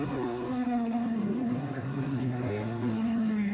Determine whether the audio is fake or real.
fake